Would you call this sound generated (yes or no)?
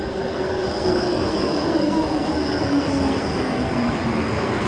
yes